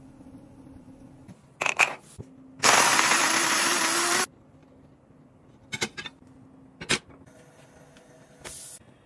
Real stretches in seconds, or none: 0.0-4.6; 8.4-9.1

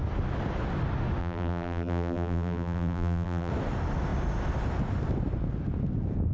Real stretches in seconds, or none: 0.0-1.2; 3.5-6.3

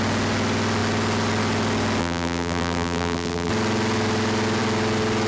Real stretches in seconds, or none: 0.0-2.0; 3.5-5.3